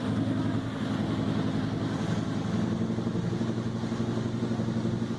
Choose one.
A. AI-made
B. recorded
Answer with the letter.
B